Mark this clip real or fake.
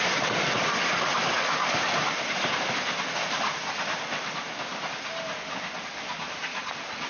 real